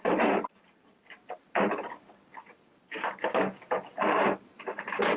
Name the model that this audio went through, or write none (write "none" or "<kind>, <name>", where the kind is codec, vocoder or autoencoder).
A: vocoder, BigVGAN v2